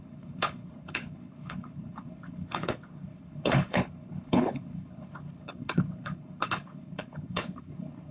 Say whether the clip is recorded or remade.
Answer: remade